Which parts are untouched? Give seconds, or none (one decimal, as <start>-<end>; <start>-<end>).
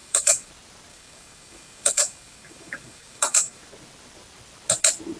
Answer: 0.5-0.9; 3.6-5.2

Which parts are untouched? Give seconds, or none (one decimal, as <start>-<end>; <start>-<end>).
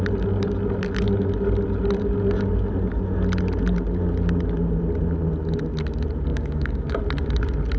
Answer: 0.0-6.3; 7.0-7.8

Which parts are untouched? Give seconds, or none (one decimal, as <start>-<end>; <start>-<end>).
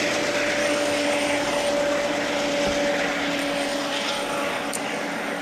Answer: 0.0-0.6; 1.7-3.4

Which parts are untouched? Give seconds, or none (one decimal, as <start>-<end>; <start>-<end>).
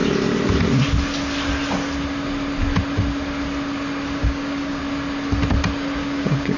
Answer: 0.0-4.2; 4.8-6.0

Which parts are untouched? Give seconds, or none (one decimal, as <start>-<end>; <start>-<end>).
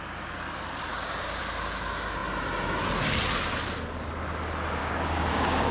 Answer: 0.0-0.9; 1.4-4.8